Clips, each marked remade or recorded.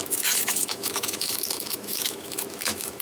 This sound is remade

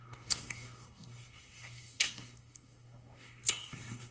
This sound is remade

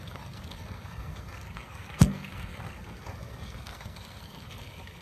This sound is remade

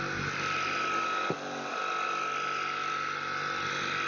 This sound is recorded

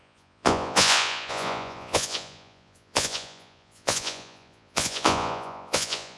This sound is remade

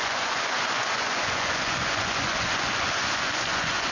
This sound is remade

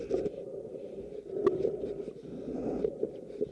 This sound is recorded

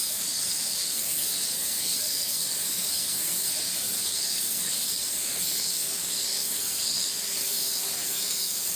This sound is remade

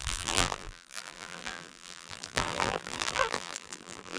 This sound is remade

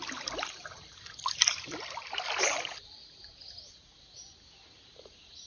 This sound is recorded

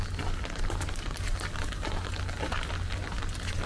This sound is recorded